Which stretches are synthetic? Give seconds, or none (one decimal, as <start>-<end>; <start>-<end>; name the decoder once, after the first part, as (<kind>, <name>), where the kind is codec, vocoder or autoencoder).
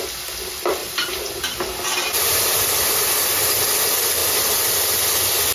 0.8-1.3 (vocoder, BigVGAN v2); 1.9-2.6